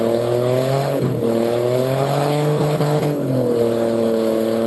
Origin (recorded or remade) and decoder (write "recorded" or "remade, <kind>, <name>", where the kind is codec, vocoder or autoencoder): remade, codec, HILCodec